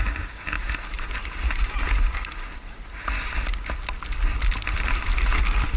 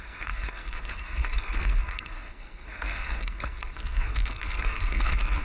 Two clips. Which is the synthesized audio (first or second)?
second